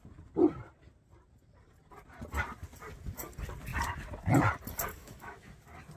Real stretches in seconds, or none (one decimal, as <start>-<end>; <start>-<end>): 0.0-4.9; 5.5-6.0